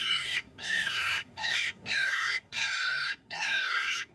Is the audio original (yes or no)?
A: no